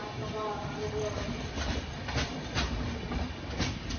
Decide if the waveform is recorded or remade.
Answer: recorded